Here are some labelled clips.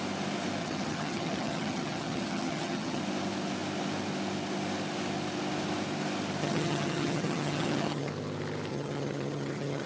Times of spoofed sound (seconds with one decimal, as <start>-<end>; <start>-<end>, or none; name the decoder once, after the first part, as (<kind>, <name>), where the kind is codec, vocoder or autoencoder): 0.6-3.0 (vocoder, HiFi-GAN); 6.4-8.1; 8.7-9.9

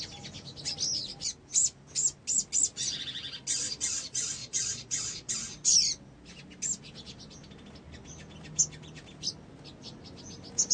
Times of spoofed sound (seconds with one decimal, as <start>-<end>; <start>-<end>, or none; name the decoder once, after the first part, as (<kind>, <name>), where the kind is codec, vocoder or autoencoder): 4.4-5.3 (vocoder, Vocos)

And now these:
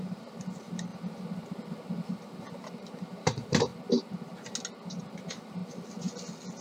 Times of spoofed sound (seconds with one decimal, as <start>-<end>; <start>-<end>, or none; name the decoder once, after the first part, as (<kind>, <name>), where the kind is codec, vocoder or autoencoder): 0.0-0.9 (vocoder, BigVGAN v2); 2.1-3.7; 5.0-5.6

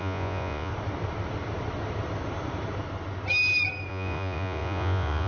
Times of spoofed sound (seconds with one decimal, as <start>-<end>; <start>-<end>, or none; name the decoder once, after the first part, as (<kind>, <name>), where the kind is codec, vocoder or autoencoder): 0.0-0.7 (vocoder, Vocos); 3.9-5.3

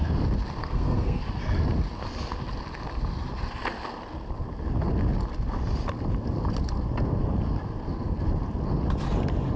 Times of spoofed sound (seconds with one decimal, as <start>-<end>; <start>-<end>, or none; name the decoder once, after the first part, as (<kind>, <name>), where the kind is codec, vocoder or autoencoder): 0.6-1.2 (codec, SNAC)

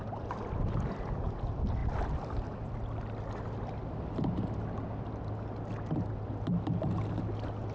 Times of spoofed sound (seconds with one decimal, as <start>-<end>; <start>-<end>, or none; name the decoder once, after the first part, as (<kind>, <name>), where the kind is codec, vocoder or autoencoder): none

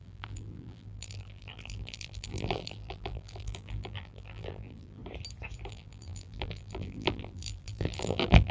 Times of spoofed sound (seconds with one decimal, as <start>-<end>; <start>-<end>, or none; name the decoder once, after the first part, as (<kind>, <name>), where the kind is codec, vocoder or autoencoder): 0.0-5.0 (vocoder, BigVGAN v2); 5.7-8.5

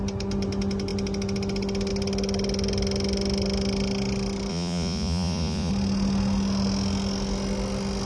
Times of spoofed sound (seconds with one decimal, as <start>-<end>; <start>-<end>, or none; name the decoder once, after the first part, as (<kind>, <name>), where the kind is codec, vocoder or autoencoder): 4.5-5.7 (vocoder, Vocos)